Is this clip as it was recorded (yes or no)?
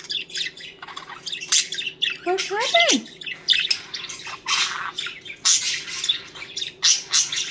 yes